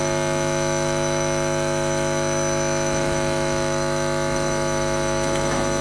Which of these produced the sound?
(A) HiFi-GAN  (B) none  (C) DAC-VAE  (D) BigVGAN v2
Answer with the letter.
C